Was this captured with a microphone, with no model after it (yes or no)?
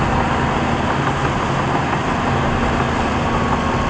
yes